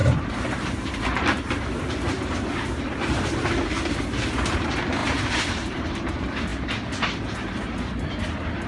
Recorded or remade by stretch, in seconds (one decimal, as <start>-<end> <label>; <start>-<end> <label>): 0.0-4.0 remade; 4.0-5.0 recorded; 5.0-6.1 remade; 6.1-8.7 recorded